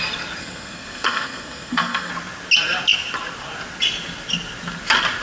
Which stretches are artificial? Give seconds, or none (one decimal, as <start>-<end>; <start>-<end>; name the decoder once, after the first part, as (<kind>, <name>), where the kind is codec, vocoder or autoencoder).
0.4-2.1 (codec, SNAC)